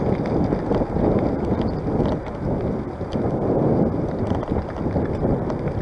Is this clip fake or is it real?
real